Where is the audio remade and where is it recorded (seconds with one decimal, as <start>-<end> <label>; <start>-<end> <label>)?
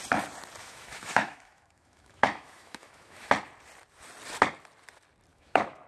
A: 0.0-0.6 recorded; 0.6-3.3 remade; 3.3-5.3 recorded; 5.3-5.9 remade